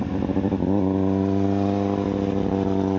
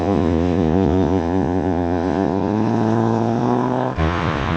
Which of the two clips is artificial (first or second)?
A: second